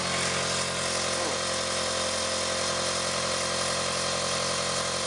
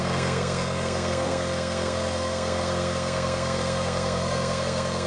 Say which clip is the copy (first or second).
second